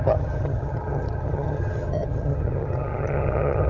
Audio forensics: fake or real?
fake